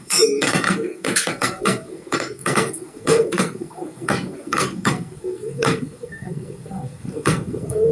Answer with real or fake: fake